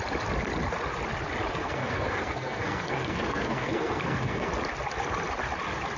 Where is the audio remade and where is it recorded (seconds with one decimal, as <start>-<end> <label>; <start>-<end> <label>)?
0.0-1.5 recorded; 1.5-4.5 remade; 4.5-6.0 recorded